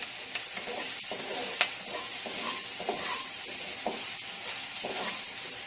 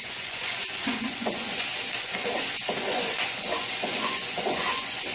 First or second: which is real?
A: first